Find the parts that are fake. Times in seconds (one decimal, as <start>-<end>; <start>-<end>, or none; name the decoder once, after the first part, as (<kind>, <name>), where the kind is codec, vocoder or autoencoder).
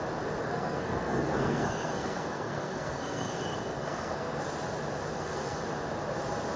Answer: 0.4-4.4 (codec, SNAC); 5.1-5.6